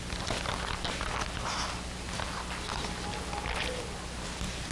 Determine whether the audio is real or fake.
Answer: real